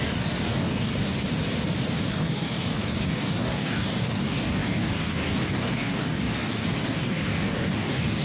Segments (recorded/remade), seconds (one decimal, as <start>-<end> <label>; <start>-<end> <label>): 0.0-0.9 remade; 0.9-2.1 recorded; 2.1-8.2 remade